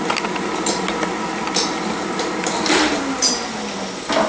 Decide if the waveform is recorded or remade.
recorded